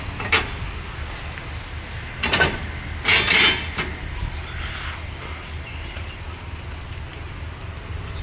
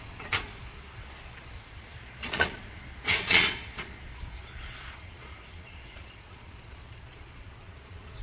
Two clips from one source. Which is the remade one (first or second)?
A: second